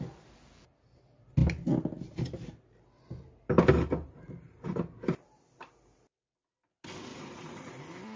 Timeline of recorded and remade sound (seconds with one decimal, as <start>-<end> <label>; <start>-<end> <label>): 0.0-7.1 recorded; 7.1-7.7 remade; 7.7-8.2 recorded